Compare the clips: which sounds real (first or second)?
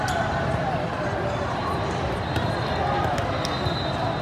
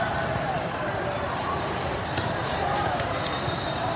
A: first